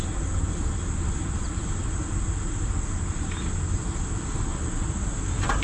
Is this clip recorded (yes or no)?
yes